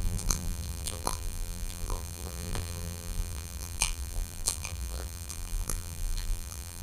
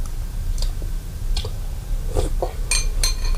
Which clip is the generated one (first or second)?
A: first